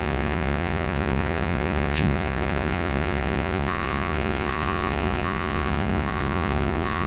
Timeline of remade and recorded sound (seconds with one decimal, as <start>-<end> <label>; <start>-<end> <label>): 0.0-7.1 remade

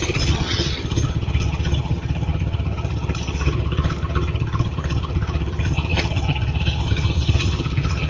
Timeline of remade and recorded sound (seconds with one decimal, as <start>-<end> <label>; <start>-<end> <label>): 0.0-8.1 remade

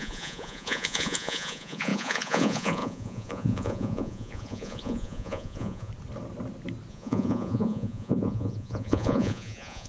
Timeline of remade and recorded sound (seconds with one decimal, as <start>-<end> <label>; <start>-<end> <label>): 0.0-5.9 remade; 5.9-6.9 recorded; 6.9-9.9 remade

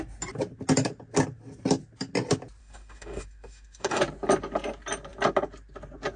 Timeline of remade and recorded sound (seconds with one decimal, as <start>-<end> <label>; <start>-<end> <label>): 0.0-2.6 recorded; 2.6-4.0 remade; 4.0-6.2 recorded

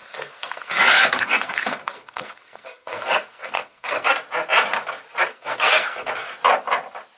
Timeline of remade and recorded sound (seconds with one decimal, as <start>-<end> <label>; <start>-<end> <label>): 0.0-4.1 remade; 4.1-5.3 recorded; 5.3-6.1 remade; 6.1-7.2 recorded

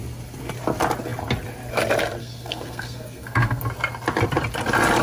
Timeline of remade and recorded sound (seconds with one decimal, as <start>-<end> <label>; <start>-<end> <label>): 0.0-2.2 recorded; 2.2-3.6 remade; 3.6-5.0 recorded

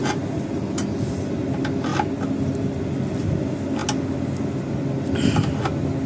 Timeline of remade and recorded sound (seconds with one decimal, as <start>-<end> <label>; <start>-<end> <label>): 0.0-6.1 recorded